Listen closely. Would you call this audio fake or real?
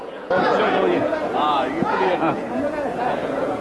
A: fake